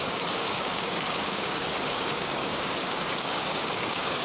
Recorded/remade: remade